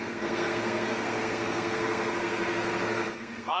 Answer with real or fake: fake